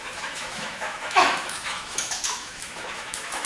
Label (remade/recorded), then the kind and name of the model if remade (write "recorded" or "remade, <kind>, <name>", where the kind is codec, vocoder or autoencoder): remade, autoencoder, DAC-VAE